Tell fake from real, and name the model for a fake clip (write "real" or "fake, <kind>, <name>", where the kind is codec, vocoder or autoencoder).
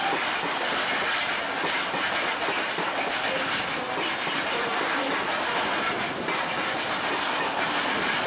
real